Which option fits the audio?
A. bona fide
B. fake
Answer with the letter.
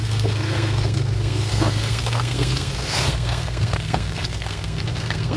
B